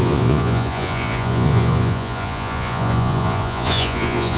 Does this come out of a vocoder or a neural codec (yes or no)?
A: yes